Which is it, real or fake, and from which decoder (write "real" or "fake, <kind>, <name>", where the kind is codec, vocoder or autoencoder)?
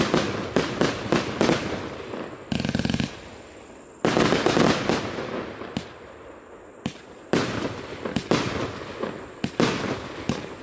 real